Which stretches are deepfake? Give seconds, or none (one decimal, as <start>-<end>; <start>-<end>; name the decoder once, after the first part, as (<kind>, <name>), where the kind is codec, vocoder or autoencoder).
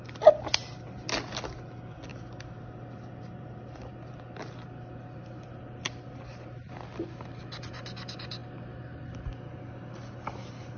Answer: none